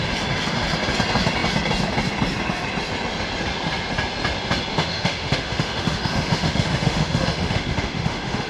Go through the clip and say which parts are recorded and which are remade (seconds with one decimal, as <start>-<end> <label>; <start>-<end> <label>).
0.0-4.7 recorded; 4.7-8.5 remade